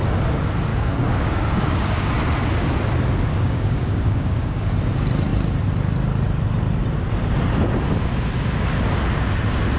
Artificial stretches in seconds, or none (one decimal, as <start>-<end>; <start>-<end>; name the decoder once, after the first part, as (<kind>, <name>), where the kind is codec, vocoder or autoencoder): 0.7-2.1 (codec, DAC); 3.3-4.7